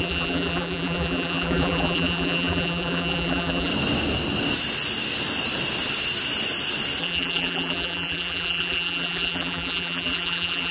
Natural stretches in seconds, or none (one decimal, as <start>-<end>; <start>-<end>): 3.7-7.0